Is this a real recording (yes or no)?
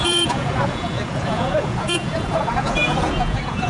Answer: no